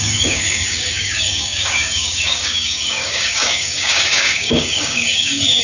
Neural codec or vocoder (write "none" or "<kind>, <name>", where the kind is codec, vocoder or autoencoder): codec, DAC